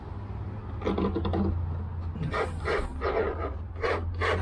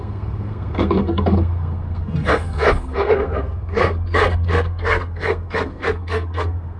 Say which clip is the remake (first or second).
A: second